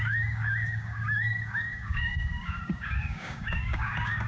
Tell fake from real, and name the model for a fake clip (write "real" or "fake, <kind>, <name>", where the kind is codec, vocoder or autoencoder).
fake, codec, DAC